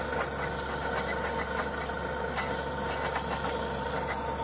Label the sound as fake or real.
real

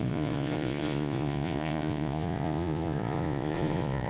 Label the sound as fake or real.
fake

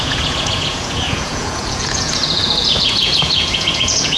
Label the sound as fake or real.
fake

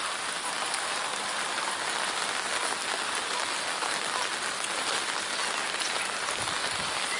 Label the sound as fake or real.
real